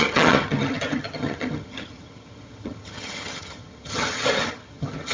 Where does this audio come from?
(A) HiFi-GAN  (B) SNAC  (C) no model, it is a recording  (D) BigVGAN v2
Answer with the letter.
A